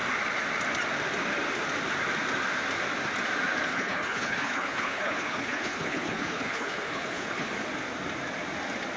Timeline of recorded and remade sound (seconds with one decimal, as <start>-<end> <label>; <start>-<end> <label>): 0.0-3.7 recorded; 3.7-7.5 remade; 7.5-9.0 recorded

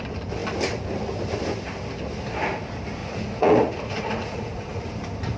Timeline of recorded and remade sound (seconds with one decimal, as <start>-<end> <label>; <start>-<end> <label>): 0.0-3.0 recorded; 3.0-4.9 remade; 4.9-5.4 recorded

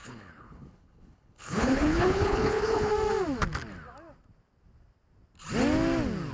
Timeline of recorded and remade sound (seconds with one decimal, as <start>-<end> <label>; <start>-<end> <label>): 0.0-2.9 remade; 2.9-6.3 recorded

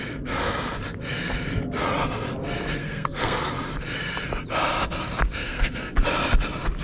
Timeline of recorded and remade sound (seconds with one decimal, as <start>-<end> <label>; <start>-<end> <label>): 0.0-2.8 recorded; 2.8-3.5 remade; 3.5-5.4 recorded; 5.4-5.9 remade; 5.9-6.8 recorded

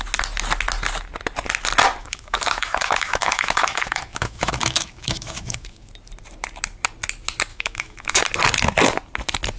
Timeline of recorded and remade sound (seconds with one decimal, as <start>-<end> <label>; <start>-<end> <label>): 0.0-2.0 recorded; 2.0-5.9 remade; 5.9-7.5 recorded; 7.5-8.2 remade; 8.2-9.6 recorded

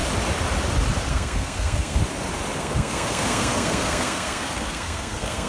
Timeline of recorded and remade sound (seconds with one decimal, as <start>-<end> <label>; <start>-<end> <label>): 0.0-1.1 recorded; 1.1-2.0 remade; 2.0-2.6 recorded; 2.6-5.5 remade